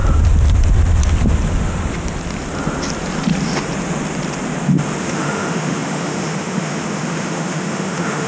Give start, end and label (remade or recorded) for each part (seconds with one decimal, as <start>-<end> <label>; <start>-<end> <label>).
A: 0.0-5.0 recorded; 5.0-8.3 remade